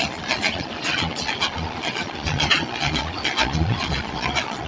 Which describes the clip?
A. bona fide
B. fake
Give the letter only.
B